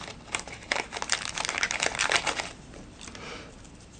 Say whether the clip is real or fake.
real